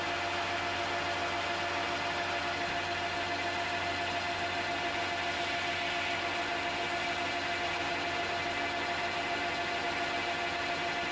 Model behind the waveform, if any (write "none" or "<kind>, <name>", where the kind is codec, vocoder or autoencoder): none